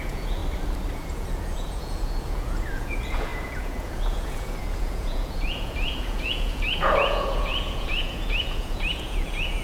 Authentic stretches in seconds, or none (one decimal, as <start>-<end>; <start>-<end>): 0.4-0.9

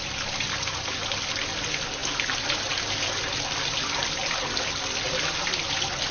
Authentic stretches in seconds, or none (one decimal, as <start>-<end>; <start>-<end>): 0.0-6.1

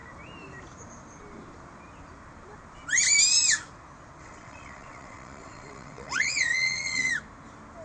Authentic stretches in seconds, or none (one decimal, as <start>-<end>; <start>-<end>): 0.0-4.2; 7.1-7.8

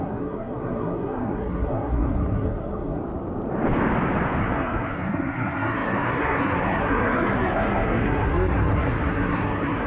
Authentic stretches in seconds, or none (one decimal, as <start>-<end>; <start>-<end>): 3.0-4.4